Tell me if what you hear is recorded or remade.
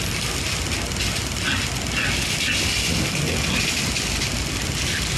recorded